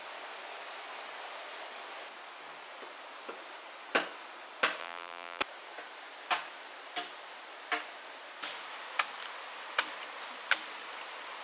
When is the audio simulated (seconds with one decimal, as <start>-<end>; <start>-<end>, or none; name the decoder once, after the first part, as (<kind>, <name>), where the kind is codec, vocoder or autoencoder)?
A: 4.8-5.4 (vocoder, BigVGAN v2)